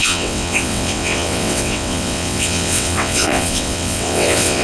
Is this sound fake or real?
fake